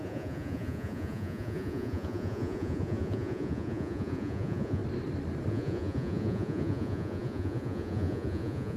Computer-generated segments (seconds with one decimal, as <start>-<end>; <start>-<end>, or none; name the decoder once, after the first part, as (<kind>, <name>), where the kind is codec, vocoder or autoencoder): 0.0-4.8 (vocoder, Vocos); 5.5-8.8